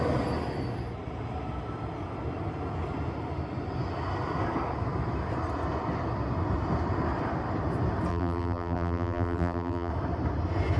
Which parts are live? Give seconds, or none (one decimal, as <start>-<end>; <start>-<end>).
0.0-8.1; 9.9-10.8